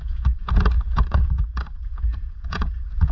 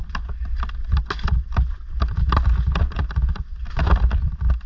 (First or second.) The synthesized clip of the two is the first